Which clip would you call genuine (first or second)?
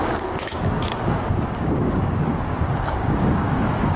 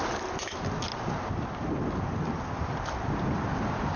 second